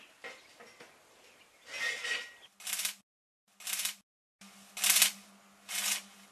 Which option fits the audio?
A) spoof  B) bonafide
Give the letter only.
B